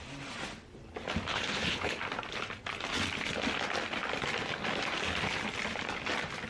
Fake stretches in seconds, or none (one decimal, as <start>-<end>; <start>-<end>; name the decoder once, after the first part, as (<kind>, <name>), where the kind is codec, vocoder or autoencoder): 1.3-2.0 (codec, HILCodec)